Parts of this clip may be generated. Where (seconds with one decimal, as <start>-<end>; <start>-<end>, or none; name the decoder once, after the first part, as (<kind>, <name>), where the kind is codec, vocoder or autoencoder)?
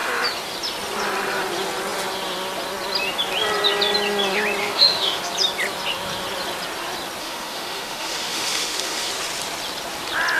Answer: 4.6-5.2 (autoencoder, DAC-VAE); 7.2-9.1